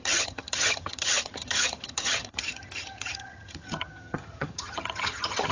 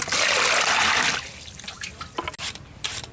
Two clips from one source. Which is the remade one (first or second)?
first